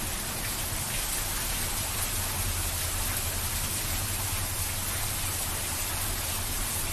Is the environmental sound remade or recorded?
recorded